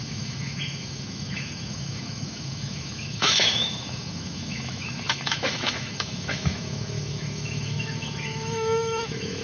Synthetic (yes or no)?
yes